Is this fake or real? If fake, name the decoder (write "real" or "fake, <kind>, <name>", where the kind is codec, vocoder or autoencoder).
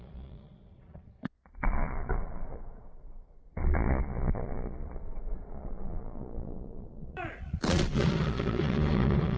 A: fake, vocoder, Vocos